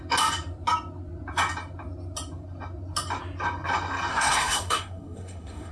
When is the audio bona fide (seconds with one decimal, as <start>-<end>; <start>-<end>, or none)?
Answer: 0.0-4.1